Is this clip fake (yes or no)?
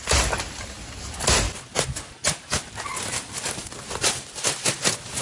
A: no